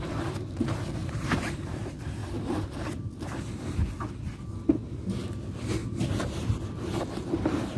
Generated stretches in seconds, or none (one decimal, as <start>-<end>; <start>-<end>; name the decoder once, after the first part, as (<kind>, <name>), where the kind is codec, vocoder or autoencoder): 1.0-1.8 (vocoder, BigVGAN v2); 2.2-2.7; 5.8-6.5